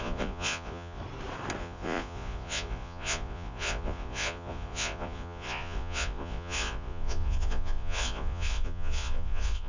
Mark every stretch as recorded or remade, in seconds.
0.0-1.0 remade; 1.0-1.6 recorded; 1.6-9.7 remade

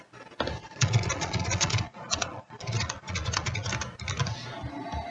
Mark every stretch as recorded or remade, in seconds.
0.0-0.6 recorded; 0.6-3.7 remade; 3.7-5.1 recorded

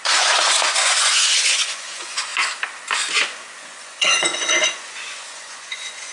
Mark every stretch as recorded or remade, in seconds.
0.0-2.3 remade; 2.3-3.2 recorded; 3.2-6.1 remade

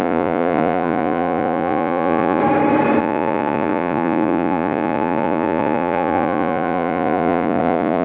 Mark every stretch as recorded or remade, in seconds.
0.0-2.4 remade; 2.4-3.0 recorded; 3.0-8.0 remade

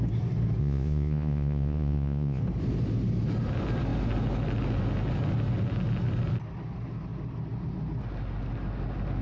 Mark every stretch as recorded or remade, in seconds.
0.0-0.6 recorded; 0.6-2.4 remade; 2.4-9.2 recorded

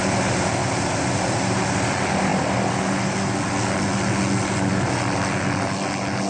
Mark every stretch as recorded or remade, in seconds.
0.0-6.3 recorded